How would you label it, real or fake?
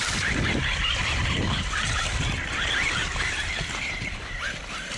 real